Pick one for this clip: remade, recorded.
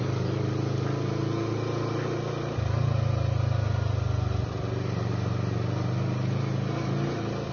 recorded